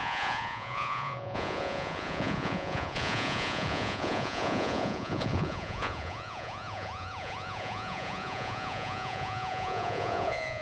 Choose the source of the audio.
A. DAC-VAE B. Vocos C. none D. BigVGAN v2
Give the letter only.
B